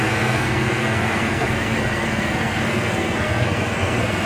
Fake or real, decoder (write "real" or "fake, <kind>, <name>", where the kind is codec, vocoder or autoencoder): fake, codec, SNAC